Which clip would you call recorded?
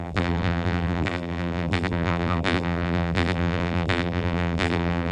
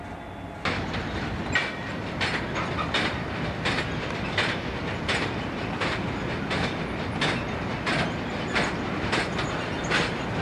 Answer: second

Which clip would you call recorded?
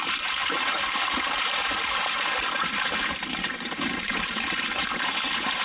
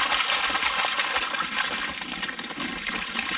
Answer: second